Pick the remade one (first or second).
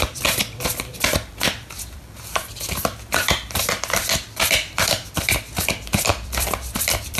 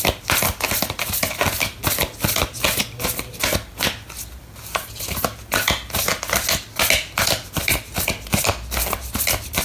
first